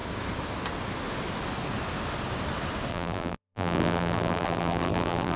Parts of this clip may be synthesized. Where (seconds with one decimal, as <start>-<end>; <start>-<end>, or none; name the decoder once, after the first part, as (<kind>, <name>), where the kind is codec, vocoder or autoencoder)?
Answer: 2.9-5.4 (vocoder, BigVGAN v2)